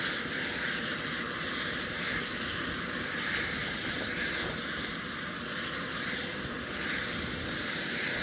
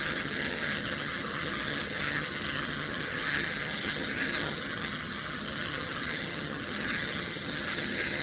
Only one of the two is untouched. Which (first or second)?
first